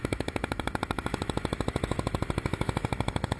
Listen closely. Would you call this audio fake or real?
fake